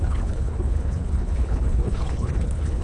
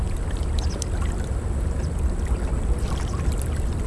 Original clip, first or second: second